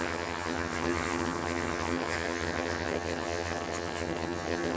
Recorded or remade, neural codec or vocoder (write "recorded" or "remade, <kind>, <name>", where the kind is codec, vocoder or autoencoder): remade, vocoder, HiFi-GAN